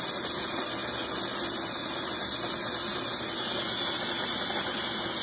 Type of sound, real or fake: real